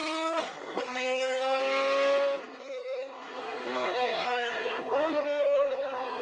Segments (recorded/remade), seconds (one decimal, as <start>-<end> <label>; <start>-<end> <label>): 0.0-1.6 remade; 1.6-2.4 recorded; 2.4-6.2 remade